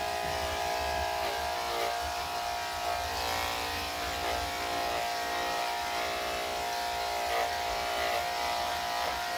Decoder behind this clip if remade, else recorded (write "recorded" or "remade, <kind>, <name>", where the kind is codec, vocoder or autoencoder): recorded